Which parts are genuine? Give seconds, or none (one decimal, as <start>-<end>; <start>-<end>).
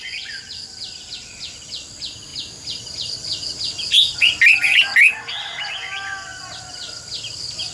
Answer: 0.0-7.7